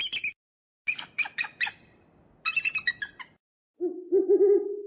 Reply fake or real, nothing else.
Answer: real